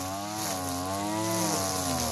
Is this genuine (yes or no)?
yes